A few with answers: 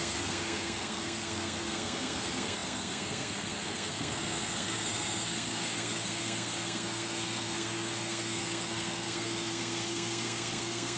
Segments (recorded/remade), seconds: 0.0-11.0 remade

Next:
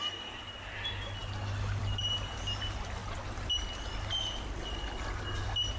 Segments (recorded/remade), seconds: 0.0-5.8 recorded

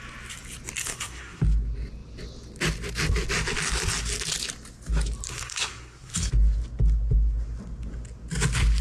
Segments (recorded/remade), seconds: 0.0-0.8 recorded; 0.8-1.4 remade; 1.4-5.3 recorded; 5.3-6.3 remade; 6.3-8.8 recorded

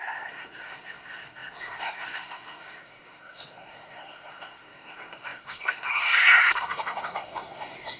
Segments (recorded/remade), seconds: 0.0-8.0 remade